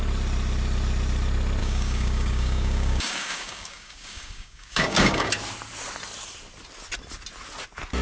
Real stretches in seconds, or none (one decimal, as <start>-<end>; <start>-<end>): 0.0-1.6; 5.3-8.0